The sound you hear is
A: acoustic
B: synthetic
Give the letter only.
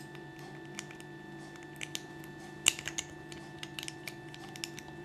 A